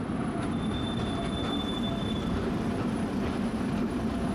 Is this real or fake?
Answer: real